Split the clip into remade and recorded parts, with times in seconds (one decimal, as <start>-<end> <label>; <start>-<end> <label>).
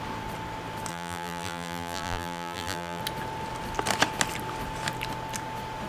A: 0.0-0.9 recorded; 0.9-3.0 remade; 3.0-5.9 recorded